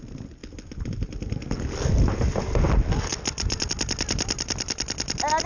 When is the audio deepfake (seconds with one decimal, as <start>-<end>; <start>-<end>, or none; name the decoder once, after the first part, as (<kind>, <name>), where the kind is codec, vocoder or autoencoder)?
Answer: none